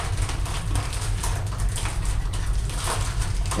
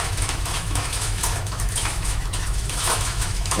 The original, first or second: first